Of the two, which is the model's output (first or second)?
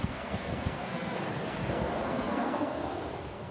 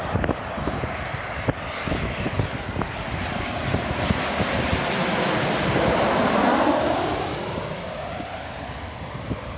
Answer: first